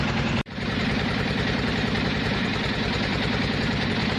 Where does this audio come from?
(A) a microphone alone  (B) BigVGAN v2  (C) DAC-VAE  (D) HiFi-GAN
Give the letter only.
B